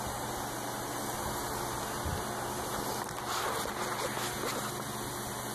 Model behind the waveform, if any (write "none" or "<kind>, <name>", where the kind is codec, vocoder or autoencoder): none